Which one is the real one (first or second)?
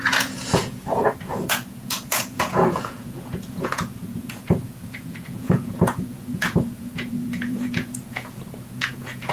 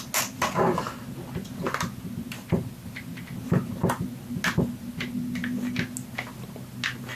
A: second